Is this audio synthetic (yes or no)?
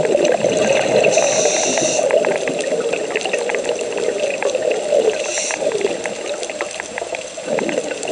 no